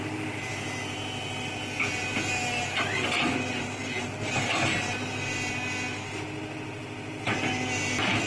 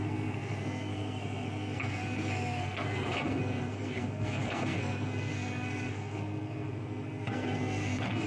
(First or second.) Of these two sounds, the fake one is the second